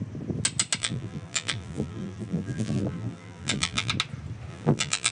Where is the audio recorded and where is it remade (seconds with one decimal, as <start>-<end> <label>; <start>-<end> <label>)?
0.0-0.8 recorded; 0.8-3.9 remade; 3.9-4.5 recorded; 4.5-5.1 remade